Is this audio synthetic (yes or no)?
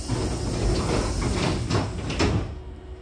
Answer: no